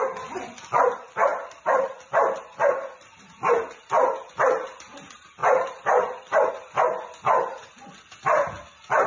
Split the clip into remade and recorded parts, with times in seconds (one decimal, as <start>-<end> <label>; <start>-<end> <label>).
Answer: 0.0-1.3 recorded; 1.3-1.9 remade; 1.9-5.4 recorded; 5.4-6.5 remade; 6.5-9.1 recorded